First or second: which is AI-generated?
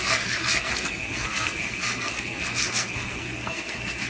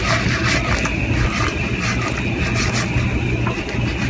first